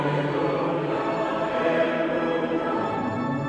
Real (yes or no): no